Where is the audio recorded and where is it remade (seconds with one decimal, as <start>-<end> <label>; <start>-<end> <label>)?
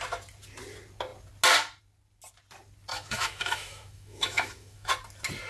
0.0-2.9 recorded; 2.9-4.9 remade; 4.9-5.5 recorded